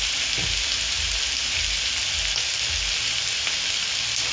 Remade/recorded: recorded